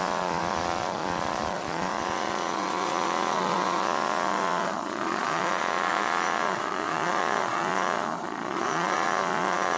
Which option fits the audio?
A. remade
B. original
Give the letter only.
A